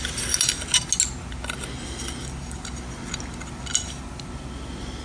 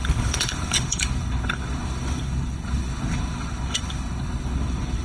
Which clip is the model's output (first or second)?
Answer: second